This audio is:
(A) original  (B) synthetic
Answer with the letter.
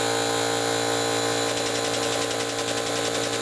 A